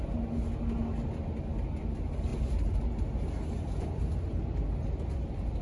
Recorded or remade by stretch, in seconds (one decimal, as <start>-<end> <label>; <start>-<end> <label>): 0.0-5.6 recorded